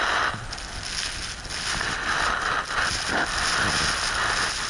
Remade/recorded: recorded